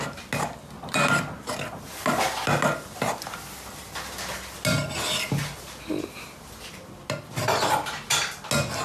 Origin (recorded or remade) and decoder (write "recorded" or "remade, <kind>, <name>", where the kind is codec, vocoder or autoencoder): recorded